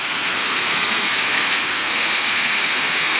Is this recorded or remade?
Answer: remade